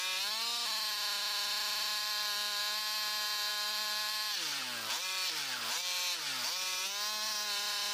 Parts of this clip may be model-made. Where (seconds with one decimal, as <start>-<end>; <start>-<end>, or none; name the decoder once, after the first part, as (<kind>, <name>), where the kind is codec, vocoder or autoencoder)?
1.6-2.6 (vocoder, BigVGAN v2); 3.5-6.0